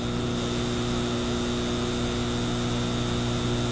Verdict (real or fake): real